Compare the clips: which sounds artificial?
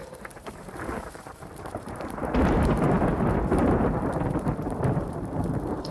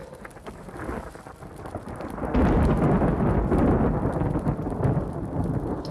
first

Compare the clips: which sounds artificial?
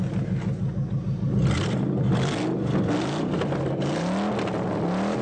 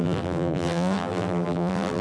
second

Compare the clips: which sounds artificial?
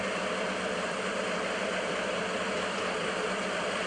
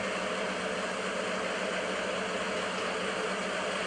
first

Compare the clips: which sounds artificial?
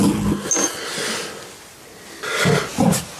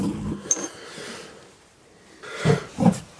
second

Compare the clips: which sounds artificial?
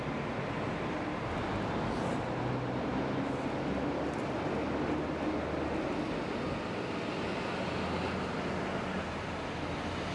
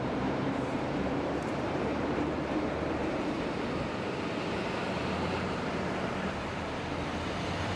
second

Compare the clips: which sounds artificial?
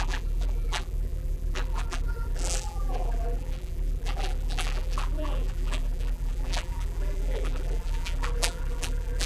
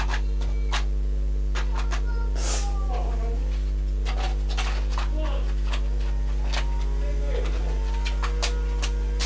first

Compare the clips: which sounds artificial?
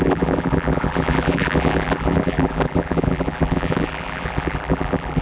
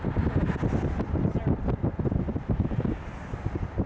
first